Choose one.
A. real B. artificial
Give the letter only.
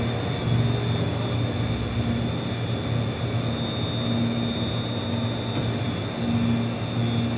A